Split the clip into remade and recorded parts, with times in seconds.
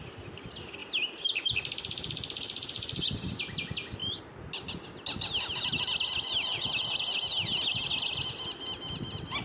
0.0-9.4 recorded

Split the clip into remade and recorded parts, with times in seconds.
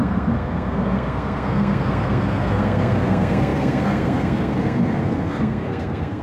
0.0-6.2 remade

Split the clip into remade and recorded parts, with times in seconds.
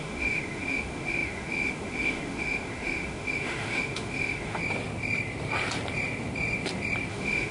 0.0-4.6 remade; 4.6-7.1 recorded; 7.1-7.5 remade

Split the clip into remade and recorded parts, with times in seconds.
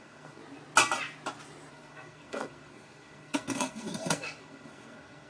0.0-0.4 remade; 0.4-1.7 recorded; 1.7-5.3 remade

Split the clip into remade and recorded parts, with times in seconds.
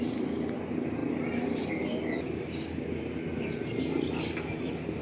0.0-5.0 recorded